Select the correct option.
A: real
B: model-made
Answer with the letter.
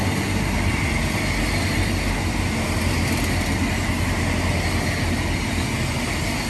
A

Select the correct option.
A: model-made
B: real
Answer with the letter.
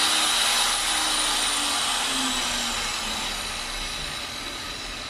B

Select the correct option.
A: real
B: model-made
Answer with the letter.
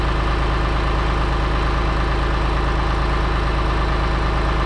A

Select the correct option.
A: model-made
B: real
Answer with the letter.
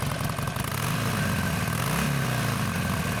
B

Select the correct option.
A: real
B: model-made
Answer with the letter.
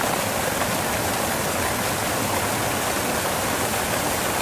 A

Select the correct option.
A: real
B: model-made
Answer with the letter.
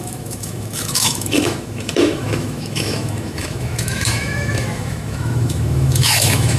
B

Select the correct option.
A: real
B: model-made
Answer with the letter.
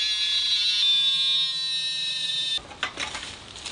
A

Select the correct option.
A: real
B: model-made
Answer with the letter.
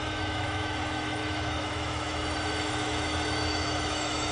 B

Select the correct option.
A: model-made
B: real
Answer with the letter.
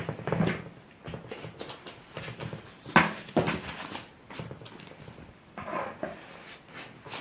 B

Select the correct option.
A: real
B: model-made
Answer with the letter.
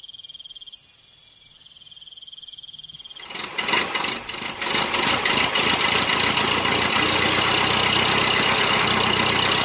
A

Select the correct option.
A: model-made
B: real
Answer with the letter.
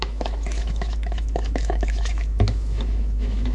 A